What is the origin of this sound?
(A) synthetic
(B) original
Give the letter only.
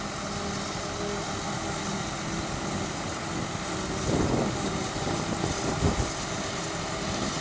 B